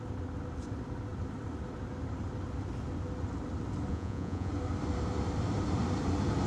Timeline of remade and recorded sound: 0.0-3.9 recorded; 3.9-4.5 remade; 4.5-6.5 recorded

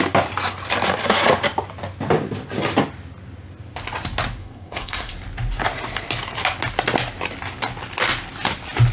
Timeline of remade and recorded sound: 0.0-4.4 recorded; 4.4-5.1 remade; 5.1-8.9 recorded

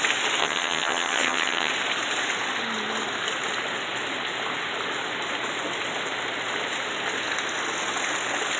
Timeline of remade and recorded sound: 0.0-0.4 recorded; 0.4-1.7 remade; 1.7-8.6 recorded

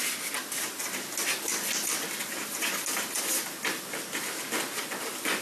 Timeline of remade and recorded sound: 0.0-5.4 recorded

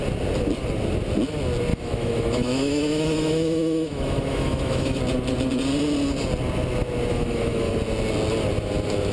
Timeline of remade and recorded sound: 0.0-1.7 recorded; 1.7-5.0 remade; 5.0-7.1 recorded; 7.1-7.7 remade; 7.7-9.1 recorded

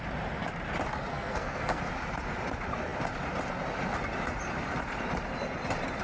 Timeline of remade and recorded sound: 0.0-1.1 recorded; 1.1-1.8 remade; 1.8-6.0 recorded